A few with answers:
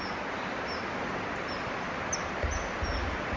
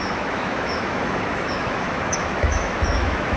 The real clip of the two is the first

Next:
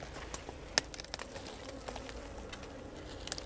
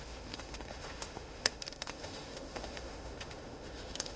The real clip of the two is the first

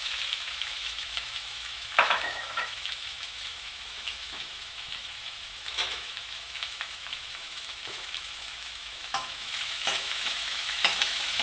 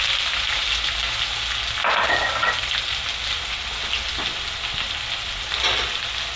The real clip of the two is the second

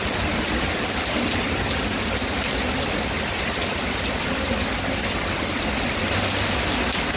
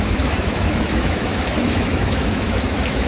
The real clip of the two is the first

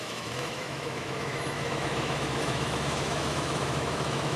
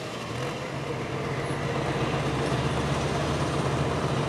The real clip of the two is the second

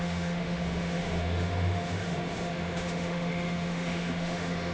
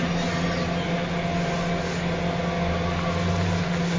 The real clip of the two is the second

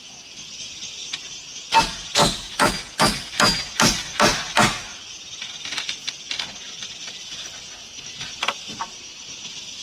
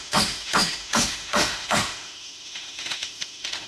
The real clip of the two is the first